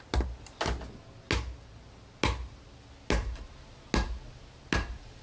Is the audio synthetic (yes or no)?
no